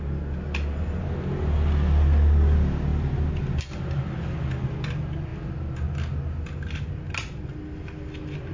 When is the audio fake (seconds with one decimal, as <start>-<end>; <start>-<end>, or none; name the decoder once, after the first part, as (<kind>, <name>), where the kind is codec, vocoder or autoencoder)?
2.9-3.4 (vocoder, BigVGAN v2)